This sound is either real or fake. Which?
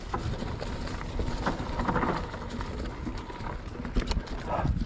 real